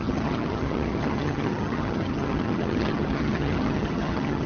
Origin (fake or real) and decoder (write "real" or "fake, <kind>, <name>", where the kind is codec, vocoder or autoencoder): fake, vocoder, HiFi-GAN